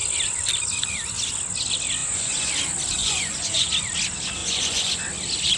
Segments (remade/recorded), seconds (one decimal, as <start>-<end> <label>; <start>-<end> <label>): 0.0-2.0 recorded; 2.0-2.5 remade; 2.5-3.0 recorded; 3.0-3.7 remade; 3.7-4.4 recorded; 4.4-5.0 remade; 5.0-5.6 recorded